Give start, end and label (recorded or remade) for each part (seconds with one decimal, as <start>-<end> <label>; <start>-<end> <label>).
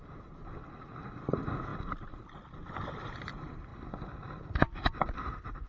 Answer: 0.0-5.7 recorded